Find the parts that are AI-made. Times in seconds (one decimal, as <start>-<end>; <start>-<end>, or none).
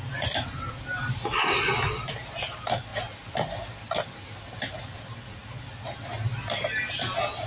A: 0.0-2.9; 4.8-5.4